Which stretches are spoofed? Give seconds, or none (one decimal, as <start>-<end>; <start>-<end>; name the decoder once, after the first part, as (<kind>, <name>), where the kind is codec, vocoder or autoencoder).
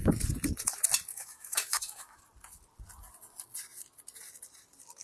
1.1-2.2 (autoencoder, DAC-VAE)